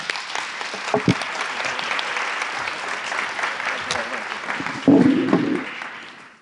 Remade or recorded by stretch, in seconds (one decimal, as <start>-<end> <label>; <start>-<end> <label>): 0.0-6.4 recorded